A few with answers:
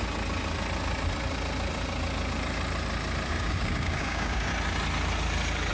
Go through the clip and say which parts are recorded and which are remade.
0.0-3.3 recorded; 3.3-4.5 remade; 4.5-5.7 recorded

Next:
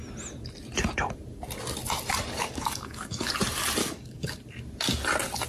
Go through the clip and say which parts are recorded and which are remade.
0.0-2.4 recorded; 2.4-3.3 remade; 3.3-3.8 recorded; 3.8-4.4 remade; 4.4-5.5 recorded

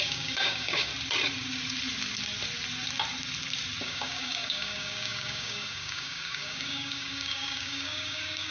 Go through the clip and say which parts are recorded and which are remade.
0.0-0.9 remade; 0.9-3.8 recorded; 3.8-8.5 remade

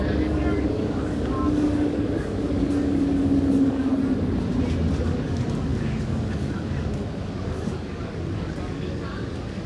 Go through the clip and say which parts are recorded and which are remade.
0.0-3.9 remade; 3.9-5.0 recorded; 5.0-9.7 remade

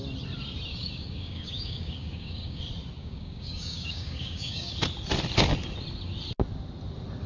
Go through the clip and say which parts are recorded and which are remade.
0.0-0.7 recorded; 0.7-2.6 remade; 2.6-3.0 recorded; 3.0-4.7 remade; 4.7-7.3 recorded

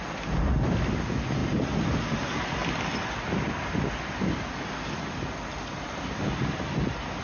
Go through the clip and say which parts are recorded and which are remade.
0.0-7.2 recorded

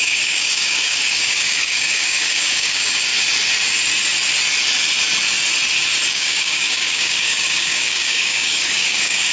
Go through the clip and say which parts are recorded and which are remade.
0.0-3.1 remade; 3.1-6.1 recorded; 6.1-9.3 remade